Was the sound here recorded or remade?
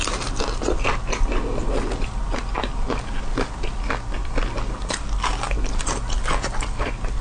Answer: recorded